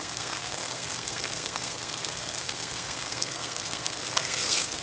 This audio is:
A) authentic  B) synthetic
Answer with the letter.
B